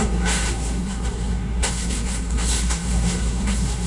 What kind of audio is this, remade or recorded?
remade